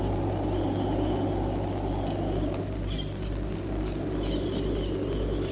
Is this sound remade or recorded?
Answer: recorded